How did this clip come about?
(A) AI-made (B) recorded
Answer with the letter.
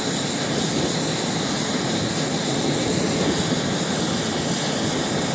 B